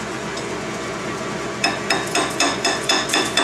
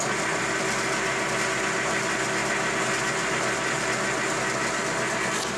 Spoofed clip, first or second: first